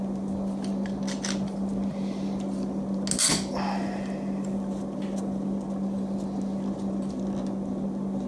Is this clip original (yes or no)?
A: yes